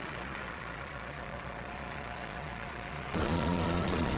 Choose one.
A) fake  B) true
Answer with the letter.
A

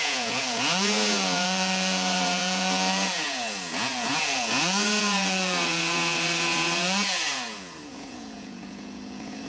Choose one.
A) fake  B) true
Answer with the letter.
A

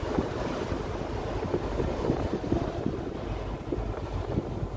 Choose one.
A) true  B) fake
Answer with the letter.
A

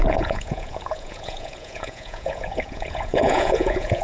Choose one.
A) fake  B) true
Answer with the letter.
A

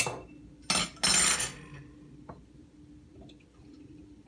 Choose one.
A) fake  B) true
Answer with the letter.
B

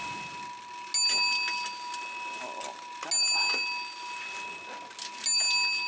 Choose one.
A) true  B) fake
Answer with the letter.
A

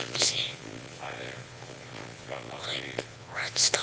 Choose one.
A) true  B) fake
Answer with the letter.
B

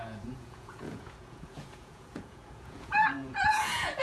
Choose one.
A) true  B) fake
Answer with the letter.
B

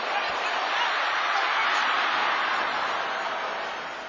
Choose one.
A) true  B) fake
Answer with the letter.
A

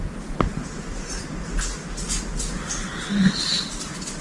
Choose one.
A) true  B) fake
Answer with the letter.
A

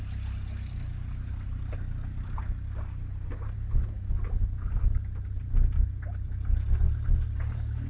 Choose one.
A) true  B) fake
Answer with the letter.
A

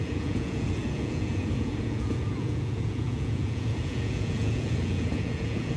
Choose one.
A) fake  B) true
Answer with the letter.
A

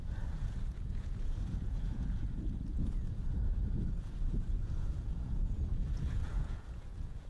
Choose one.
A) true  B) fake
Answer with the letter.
B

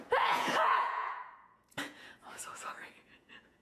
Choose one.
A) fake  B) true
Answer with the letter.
A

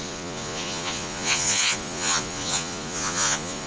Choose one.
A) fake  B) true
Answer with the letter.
A